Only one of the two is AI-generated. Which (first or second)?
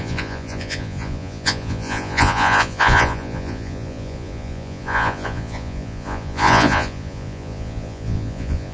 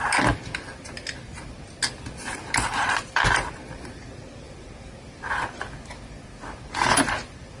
first